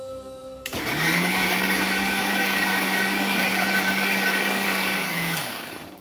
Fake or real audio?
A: fake